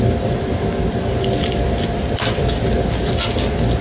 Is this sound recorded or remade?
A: recorded